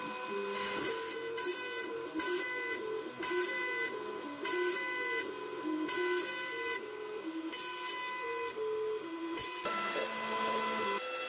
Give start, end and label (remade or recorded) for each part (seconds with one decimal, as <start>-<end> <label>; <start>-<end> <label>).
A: 0.0-11.3 recorded

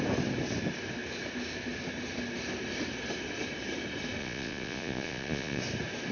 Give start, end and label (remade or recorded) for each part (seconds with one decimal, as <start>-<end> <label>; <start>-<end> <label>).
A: 0.0-4.2 recorded; 4.2-5.6 remade; 5.6-6.1 recorded